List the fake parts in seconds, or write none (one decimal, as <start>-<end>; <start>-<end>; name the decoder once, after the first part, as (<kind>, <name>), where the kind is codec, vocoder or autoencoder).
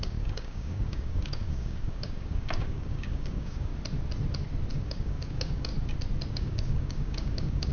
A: 0.0-3.7 (codec, DAC); 4.7-5.7; 6.3-7.7